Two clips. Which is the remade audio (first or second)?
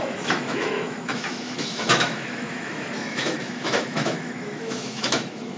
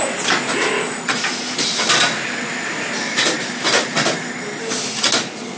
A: first